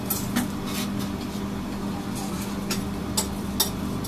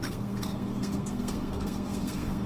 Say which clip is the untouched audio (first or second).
first